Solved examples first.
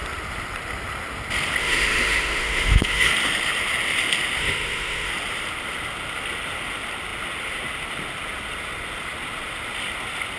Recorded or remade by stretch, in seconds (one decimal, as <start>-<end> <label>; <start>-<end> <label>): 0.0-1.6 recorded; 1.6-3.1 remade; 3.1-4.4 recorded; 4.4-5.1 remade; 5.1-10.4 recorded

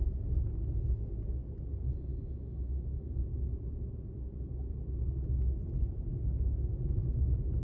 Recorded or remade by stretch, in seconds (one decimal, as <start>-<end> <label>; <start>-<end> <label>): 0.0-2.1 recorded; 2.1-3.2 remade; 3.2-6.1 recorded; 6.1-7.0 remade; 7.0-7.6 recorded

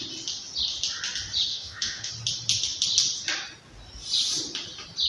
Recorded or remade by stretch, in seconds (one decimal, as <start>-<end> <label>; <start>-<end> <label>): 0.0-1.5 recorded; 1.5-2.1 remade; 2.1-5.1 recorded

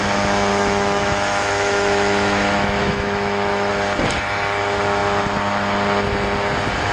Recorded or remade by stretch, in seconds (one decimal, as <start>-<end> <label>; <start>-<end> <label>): 0.0-0.5 recorded; 0.5-3.7 remade; 3.7-6.9 recorded